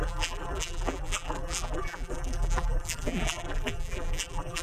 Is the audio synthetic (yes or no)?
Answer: yes